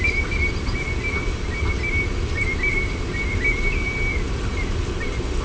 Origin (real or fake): real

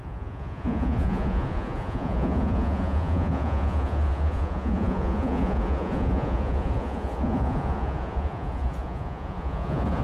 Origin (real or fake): fake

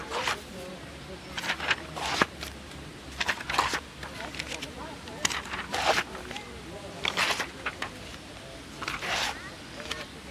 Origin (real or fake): real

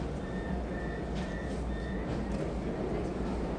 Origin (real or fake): real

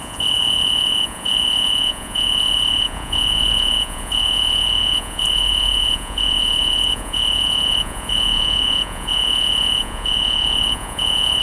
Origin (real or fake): fake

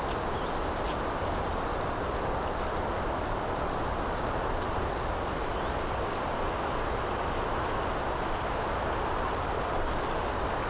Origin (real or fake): real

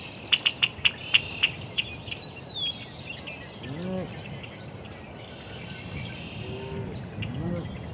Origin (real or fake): real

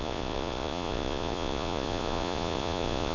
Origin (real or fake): fake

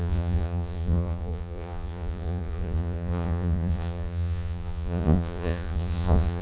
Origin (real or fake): fake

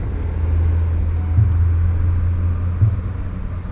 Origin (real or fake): real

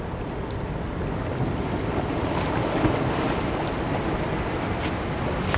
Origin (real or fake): real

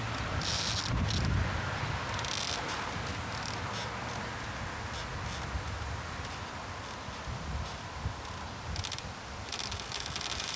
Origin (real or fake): real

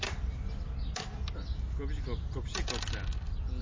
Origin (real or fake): real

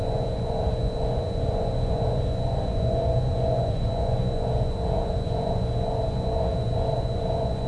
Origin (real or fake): fake